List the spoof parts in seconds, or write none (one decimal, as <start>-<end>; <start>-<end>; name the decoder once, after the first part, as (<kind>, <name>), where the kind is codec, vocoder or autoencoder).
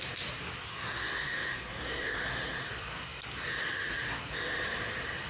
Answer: 0.7-2.7 (codec, SNAC)